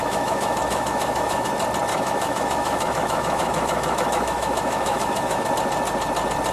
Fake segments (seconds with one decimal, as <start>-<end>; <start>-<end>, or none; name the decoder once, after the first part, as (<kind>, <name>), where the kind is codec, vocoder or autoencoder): 0.0-1.5 (autoencoder, DAC-VAE); 1.9-5.5

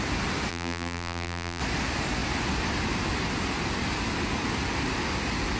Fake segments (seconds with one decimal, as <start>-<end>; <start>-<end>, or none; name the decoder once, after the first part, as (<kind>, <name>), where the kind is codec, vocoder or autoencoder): 0.5-1.6 (vocoder, BigVGAN v2)

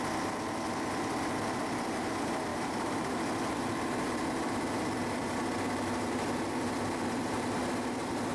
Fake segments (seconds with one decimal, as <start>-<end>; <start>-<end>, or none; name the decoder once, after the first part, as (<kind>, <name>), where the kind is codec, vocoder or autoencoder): 2.5-3.1 (vocoder, BigVGAN v2)

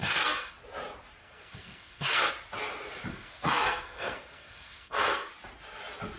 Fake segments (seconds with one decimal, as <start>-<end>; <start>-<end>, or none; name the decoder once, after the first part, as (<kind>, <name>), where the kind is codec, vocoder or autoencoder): 0.0-0.6 (codec, SNAC); 1.2-2.3; 3.1-5.3

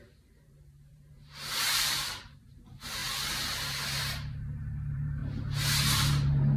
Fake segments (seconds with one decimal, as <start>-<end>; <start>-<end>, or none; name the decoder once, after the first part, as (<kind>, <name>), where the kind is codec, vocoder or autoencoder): 0.0-3.0 (vocoder, BigVGAN v2); 4.0-5.2

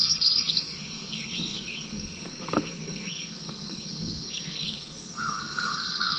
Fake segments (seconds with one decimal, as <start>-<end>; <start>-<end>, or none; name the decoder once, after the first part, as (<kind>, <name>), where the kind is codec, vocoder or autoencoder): 0.0-6.2 (codec, SNAC)

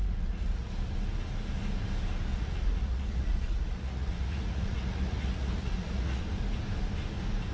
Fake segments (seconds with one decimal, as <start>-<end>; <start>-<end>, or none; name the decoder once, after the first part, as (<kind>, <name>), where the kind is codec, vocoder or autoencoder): 0.0-0.7 (vocoder, Vocos); 2.3-6.2

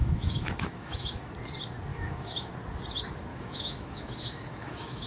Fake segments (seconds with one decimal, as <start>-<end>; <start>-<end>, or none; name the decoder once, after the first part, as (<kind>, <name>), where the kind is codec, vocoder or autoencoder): 0.0-1.3 (autoencoder, DAC-VAE); 1.9-2.5; 3.3-5.1